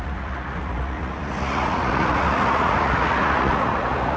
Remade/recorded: remade